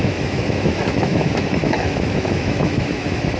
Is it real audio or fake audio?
fake